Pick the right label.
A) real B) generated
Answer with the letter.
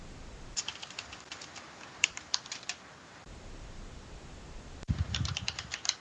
B